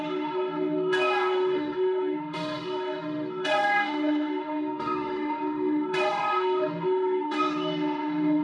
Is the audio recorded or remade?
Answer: remade